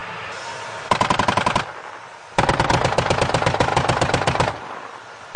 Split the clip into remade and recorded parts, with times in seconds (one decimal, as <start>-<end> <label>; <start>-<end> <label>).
0.0-3.2 recorded; 3.2-3.7 remade; 3.7-4.6 recorded; 4.6-5.4 remade